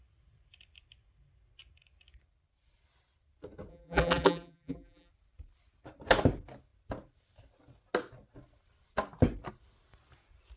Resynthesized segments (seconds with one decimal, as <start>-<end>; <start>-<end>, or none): 3.7-5.1